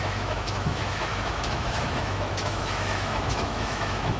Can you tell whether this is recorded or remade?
remade